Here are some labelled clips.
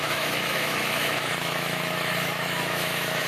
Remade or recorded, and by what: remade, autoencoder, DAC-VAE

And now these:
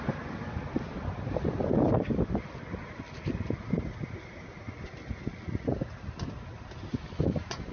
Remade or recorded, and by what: recorded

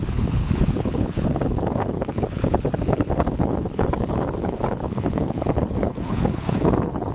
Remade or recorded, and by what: remade, codec, HILCodec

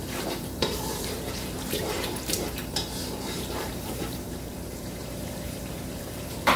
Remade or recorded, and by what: remade, vocoder, BigVGAN v2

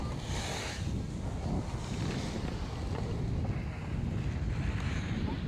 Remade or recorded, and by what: recorded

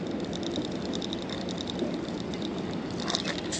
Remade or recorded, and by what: recorded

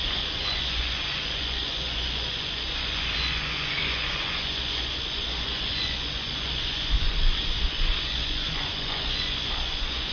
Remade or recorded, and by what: remade, vocoder, Vocos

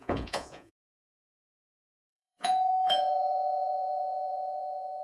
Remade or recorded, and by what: remade, vocoder, Vocos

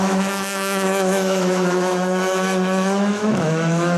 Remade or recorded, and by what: remade, autoencoder, DAC-VAE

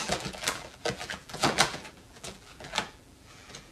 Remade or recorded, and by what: remade, vocoder, BigVGAN v2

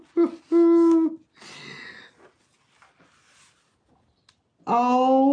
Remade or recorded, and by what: recorded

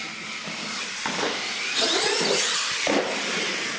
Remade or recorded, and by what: recorded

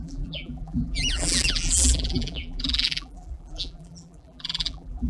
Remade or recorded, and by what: remade, vocoder, BigVGAN v2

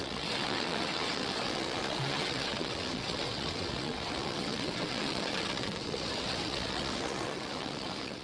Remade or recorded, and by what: remade, vocoder, WaveNeXt